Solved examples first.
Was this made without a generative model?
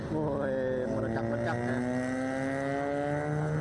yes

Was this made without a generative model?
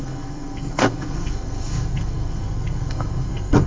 no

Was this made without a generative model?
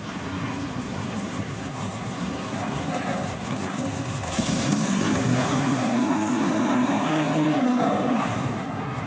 no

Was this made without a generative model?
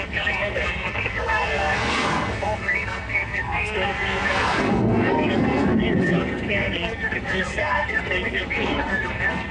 no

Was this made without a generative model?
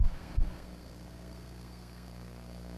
no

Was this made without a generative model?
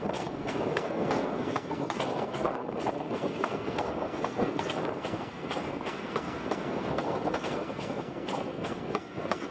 no